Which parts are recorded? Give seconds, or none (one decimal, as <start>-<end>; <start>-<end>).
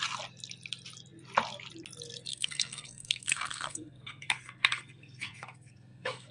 0.0-2.3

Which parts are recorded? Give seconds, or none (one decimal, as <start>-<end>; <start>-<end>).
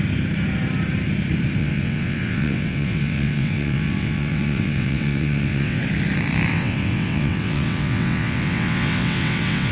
0.0-1.6; 5.8-6.5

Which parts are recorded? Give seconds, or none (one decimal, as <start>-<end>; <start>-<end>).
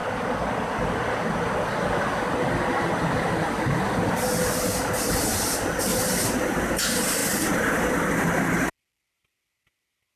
0.0-5.9; 6.7-10.2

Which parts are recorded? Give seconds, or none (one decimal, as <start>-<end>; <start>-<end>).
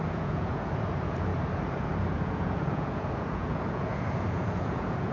1.3-1.8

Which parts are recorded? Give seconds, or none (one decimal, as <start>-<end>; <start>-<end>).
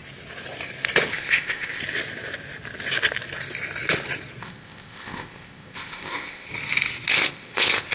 0.0-1.1; 1.8-4.4; 6.5-7.1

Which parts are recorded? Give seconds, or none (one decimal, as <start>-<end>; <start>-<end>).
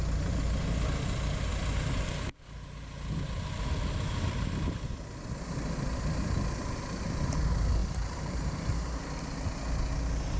0.0-7.8; 9.0-10.4